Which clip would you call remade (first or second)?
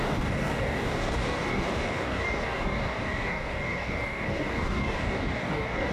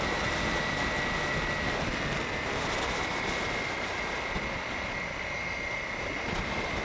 first